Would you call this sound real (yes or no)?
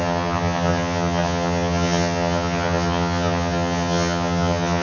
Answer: no